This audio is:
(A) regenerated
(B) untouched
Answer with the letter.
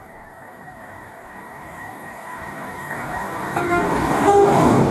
A